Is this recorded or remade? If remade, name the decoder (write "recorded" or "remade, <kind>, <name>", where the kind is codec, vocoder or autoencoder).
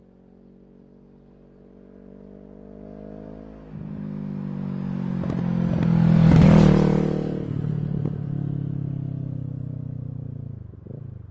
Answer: recorded